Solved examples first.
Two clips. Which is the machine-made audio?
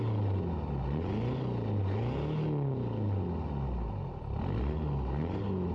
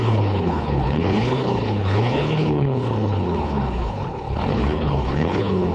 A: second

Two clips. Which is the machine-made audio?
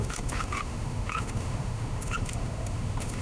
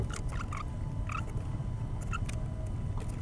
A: first